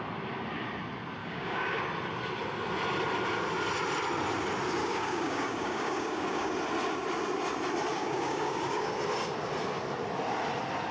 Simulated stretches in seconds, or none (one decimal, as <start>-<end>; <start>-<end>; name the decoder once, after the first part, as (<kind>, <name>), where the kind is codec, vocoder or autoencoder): 1.2-1.8 (codec, DAC); 4.8-6.5; 7.9-8.9